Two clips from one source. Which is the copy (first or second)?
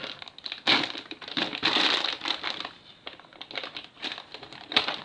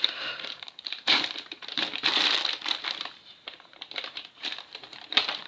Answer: second